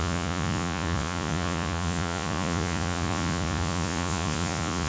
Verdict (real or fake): fake